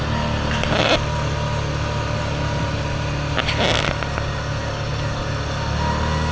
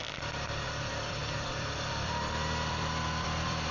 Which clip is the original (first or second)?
first